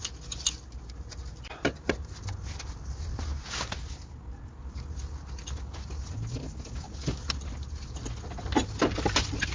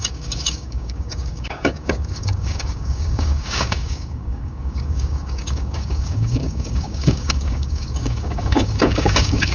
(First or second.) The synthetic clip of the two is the second